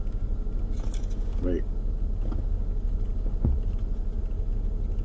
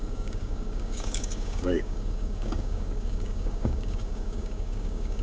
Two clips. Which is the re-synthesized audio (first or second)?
second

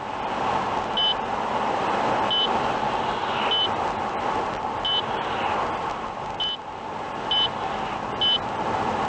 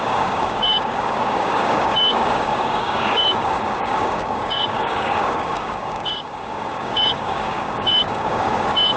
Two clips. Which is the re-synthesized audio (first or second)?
second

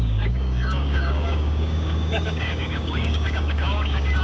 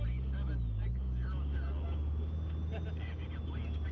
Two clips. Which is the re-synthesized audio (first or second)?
first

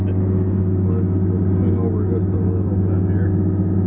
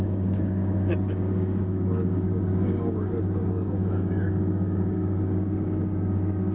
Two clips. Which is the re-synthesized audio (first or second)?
second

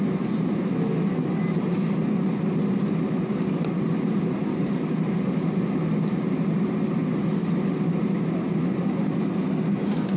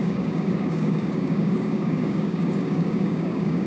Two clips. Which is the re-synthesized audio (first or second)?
second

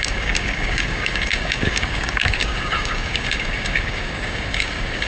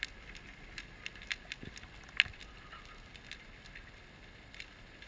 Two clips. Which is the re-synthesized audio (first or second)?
first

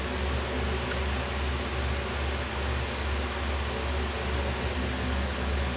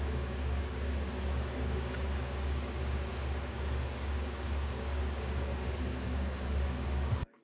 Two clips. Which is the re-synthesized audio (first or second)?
second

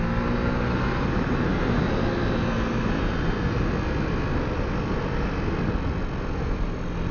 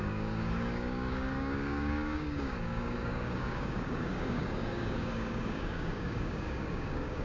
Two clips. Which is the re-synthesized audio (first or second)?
second